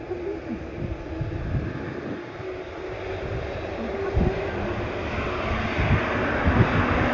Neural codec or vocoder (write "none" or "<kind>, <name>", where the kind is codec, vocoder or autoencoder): none